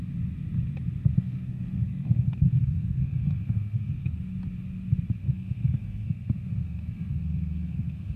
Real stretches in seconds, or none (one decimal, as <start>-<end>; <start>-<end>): 0.0-1.1; 4.2-5.2